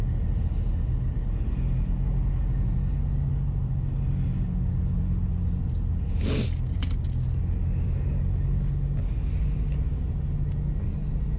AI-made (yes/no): no